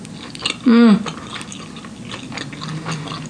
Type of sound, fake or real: real